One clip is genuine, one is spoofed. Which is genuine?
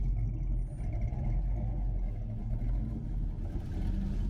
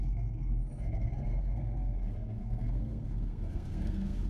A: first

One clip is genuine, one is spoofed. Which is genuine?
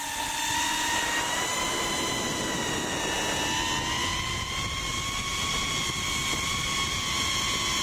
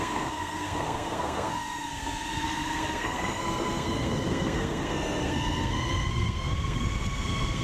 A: first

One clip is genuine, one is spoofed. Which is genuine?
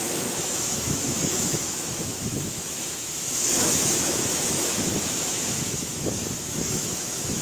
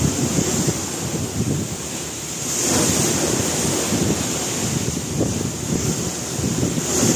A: second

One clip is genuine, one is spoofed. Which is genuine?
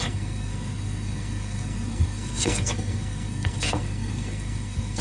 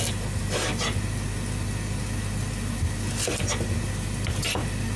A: second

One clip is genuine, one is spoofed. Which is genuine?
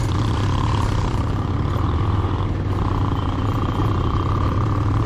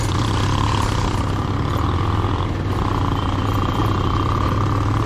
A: second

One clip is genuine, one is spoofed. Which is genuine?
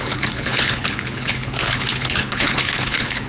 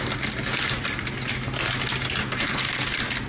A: second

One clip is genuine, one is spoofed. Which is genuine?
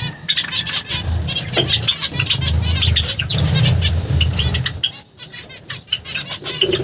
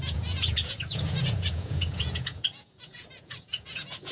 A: first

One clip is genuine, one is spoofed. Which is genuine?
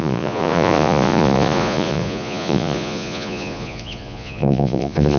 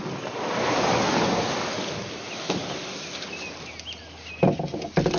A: second